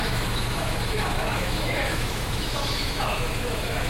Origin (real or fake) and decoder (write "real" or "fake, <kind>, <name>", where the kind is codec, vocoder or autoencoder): fake, autoencoder, DAC-VAE